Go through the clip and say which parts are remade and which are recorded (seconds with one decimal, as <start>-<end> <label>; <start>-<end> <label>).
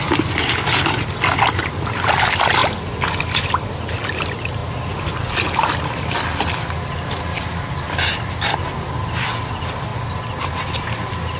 0.0-2.6 remade; 2.6-3.9 recorded; 3.9-4.6 remade; 4.6-5.3 recorded; 5.3-9.9 remade; 9.9-10.7 recorded; 10.7-11.4 remade